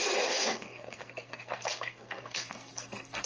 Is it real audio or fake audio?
fake